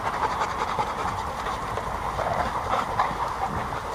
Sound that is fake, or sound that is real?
fake